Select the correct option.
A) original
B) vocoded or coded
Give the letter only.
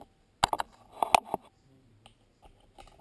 A